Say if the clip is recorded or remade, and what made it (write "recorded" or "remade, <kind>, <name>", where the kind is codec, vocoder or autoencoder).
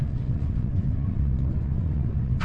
remade, vocoder, WaveNeXt